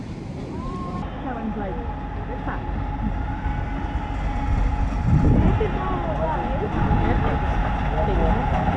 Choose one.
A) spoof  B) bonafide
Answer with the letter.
B